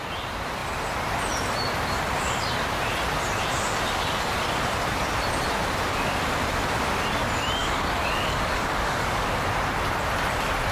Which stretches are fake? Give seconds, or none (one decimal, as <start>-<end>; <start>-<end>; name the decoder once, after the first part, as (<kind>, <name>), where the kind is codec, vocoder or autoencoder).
7.6-9.4 (codec, DAC)